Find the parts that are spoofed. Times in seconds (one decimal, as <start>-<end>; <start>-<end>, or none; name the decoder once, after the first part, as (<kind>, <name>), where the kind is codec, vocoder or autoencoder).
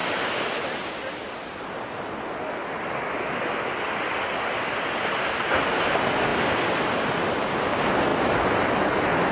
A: 6.3-7.4 (vocoder, BigVGAN v2); 8.1-8.9